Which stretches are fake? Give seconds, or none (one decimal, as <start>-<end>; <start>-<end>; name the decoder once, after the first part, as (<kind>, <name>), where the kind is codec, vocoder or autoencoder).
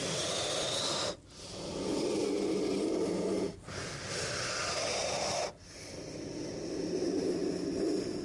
none